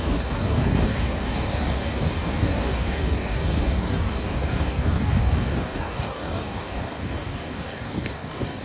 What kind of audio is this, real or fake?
fake